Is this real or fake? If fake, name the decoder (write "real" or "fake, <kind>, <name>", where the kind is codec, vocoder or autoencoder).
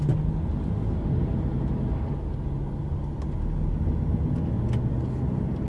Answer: real